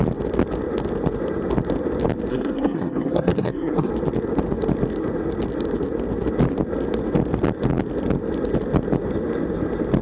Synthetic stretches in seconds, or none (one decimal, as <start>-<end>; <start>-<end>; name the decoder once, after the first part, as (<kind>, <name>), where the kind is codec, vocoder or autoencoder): 2.3-3.9 (codec, SNAC)

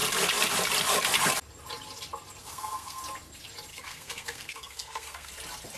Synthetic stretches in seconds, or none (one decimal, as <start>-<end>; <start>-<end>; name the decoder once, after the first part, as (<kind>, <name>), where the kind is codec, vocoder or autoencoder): 2.4-3.0 (codec, SNAC); 3.7-5.3

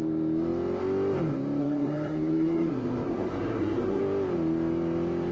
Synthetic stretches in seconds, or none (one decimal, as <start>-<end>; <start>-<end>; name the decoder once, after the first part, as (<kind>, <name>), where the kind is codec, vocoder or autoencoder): 1.6-4.0 (codec, SNAC)